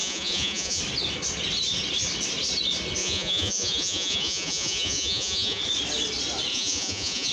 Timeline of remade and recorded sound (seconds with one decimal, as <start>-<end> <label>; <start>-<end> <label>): 0.0-0.8 remade; 0.8-3.0 recorded; 3.0-5.6 remade; 5.6-6.5 recorded; 6.5-7.3 remade